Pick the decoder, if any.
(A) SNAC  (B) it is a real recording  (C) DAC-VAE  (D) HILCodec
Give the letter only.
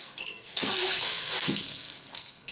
A